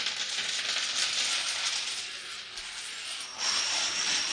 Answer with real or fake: real